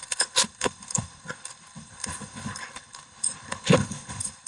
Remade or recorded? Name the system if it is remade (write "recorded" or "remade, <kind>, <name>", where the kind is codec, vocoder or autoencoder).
remade, codec, HILCodec